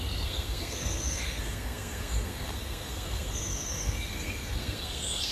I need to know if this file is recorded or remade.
remade